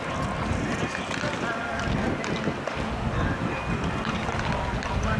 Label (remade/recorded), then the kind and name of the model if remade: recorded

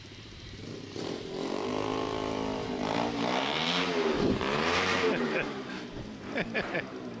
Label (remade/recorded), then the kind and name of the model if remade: remade, vocoder, BigVGAN v2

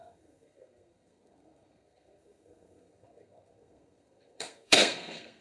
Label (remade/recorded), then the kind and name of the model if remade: remade, codec, SNAC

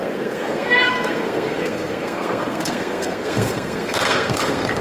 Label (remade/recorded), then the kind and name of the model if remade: remade, codec, SNAC